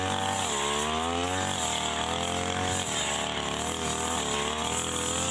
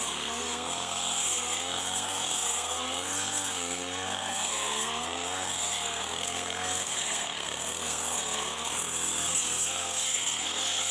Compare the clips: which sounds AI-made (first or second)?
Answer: second